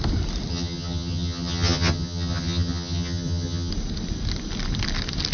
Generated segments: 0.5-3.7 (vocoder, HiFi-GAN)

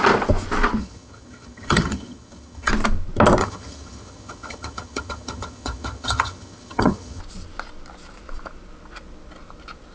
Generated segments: 0.8-2.7 (vocoder, HiFi-GAN); 3.4-7.2

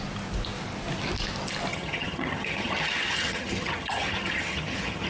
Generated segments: 1.7-5.1 (vocoder, HiFi-GAN)

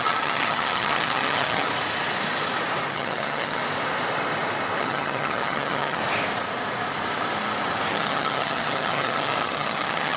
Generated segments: 0.0-1.7 (vocoder, HiFi-GAN); 2.9-3.6; 4.8-6.0; 7.9-10.2